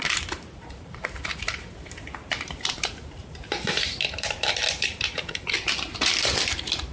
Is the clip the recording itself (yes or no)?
no